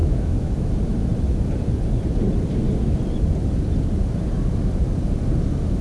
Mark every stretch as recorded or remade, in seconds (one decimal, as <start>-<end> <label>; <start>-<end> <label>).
0.0-0.7 remade; 0.7-5.8 recorded